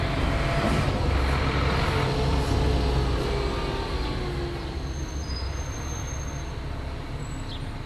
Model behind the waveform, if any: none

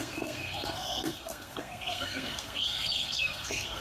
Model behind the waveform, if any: codec, SNAC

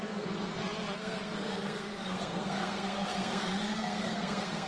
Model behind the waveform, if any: codec, SNAC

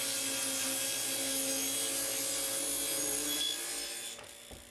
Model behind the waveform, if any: none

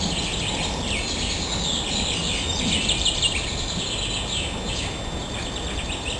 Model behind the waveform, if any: none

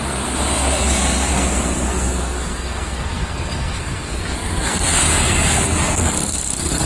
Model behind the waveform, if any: codec, SNAC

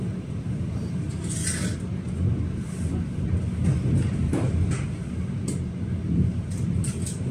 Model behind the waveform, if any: none